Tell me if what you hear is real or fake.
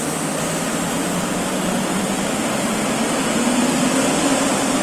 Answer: real